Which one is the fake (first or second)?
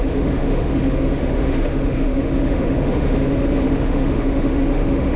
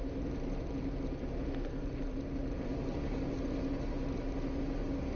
first